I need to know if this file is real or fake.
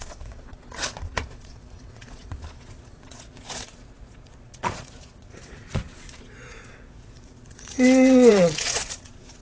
fake